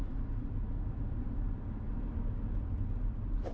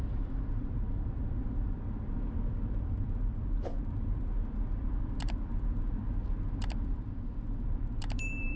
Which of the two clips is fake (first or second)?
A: second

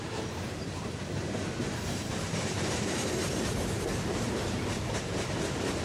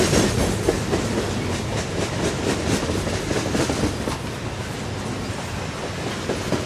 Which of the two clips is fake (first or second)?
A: first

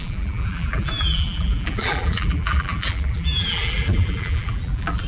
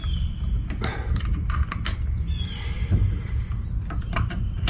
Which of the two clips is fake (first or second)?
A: first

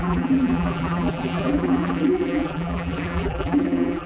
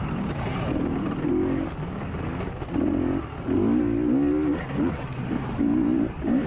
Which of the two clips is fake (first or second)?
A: first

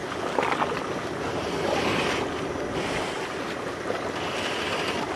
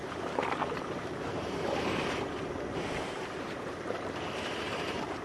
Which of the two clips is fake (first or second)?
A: second